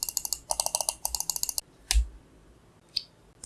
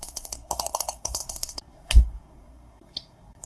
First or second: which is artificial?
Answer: second